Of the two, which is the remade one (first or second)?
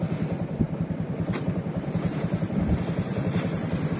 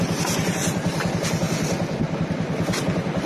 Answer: first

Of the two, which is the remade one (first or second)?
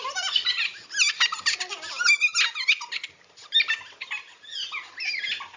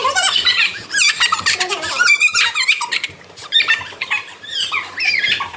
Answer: second